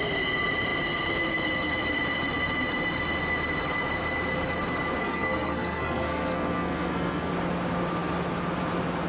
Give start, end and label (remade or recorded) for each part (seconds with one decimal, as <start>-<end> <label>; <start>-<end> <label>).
0.0-5.0 recorded; 5.0-7.3 remade; 7.3-9.1 recorded